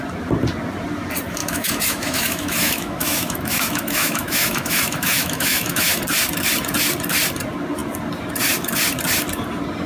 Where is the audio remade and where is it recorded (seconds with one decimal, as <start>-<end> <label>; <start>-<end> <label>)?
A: 0.0-1.4 recorded; 1.4-6.0 remade; 6.0-9.9 recorded